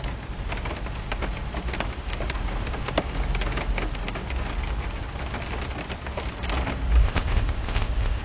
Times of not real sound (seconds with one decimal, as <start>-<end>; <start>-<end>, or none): 7.0-8.2